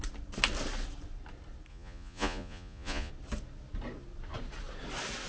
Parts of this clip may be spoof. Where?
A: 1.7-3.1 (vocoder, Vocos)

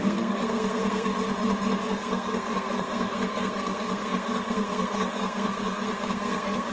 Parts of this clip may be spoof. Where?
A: 0.0-1.1 (codec, SNAC); 1.8-6.7

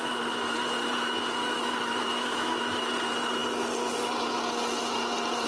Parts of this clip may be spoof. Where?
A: 1.4-2.9 (autoencoder, DAC-VAE)

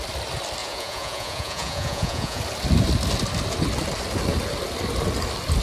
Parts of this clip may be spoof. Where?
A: 0.6-2.4 (vocoder, Vocos)

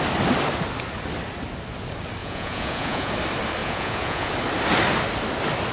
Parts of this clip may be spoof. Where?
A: 2.2-3.1 (vocoder, Vocos); 3.6-4.3